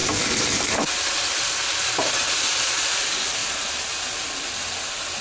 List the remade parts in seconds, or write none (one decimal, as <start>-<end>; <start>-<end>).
0.0-2.1